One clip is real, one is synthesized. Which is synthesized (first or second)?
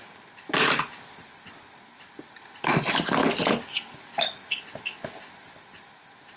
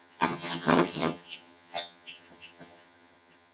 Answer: second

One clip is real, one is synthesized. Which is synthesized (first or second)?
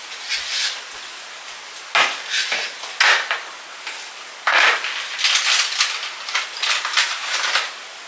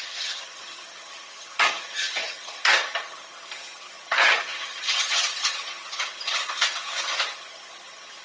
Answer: second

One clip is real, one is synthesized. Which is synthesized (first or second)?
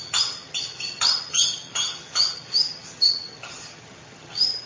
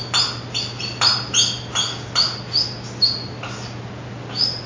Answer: first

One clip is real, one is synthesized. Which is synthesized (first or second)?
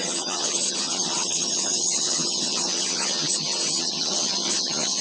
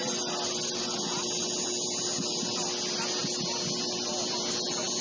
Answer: first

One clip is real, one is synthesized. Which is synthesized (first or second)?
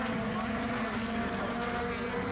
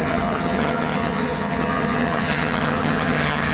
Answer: second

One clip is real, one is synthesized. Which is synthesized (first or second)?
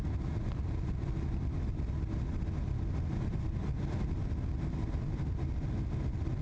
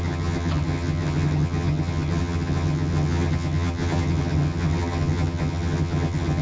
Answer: second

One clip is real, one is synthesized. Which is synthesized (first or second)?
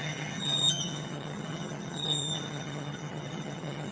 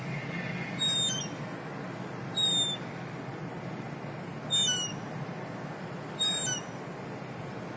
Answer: first